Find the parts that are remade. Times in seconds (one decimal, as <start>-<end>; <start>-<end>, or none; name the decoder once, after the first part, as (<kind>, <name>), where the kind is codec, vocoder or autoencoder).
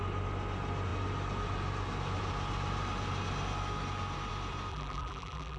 4.7-5.6 (vocoder, BigVGAN v2)